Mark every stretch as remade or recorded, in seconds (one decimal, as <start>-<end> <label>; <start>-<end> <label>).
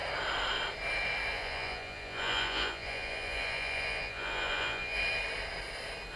0.0-1.3 recorded; 1.3-5.0 remade; 5.0-6.2 recorded